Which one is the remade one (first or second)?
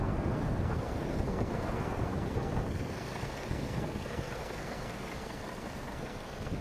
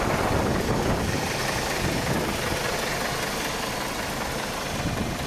first